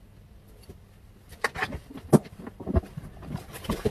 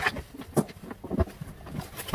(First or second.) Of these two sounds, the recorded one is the second